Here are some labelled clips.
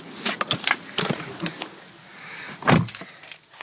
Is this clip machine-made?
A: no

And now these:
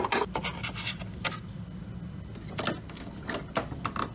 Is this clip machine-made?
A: no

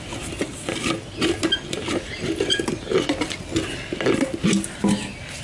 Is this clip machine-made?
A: no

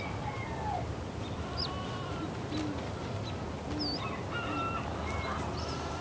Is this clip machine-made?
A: no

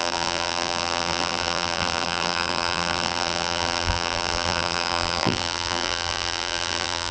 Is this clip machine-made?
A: yes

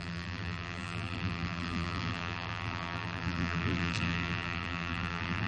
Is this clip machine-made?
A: yes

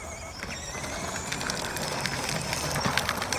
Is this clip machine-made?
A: no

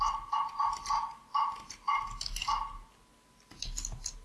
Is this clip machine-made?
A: no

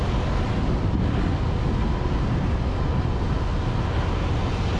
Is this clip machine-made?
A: no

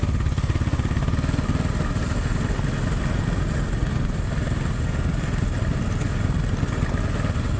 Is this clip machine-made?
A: no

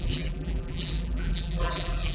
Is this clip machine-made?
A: yes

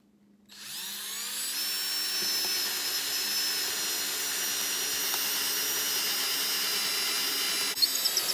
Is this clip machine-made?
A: no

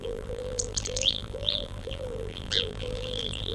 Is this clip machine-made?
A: yes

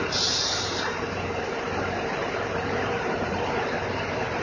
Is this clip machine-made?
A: yes